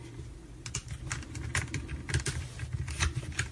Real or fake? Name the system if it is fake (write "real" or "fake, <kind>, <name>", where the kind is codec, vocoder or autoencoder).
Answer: real